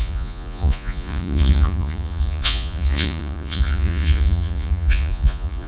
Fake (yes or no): yes